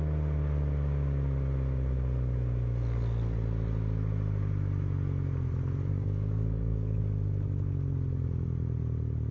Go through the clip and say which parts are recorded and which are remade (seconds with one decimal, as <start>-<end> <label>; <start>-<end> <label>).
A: 0.0-5.9 recorded; 5.9-7.0 remade; 7.0-9.3 recorded